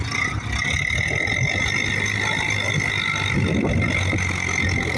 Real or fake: real